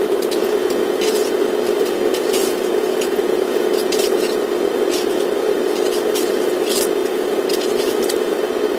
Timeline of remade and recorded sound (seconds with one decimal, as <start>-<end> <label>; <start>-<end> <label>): 0.0-0.6 recorded; 0.6-1.4 remade; 1.4-2.1 recorded; 2.1-4.4 remade; 4.4-7.0 recorded; 7.0-7.7 remade; 7.7-8.8 recorded